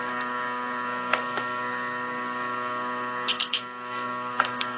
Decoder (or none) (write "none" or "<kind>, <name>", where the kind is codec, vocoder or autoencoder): codec, SNAC